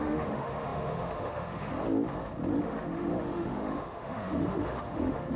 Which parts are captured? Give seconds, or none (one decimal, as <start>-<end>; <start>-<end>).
1.7-2.6